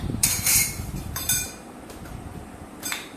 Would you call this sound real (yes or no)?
no